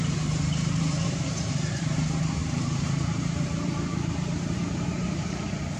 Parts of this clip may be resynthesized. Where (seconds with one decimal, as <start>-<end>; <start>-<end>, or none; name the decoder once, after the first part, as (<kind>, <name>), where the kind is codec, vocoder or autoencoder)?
0.0-5.8 (vocoder, BigVGAN v2)